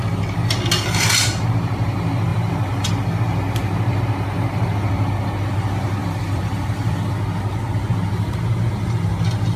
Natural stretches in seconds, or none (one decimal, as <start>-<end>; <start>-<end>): 0.0-2.3; 2.9-6.0; 7.1-9.6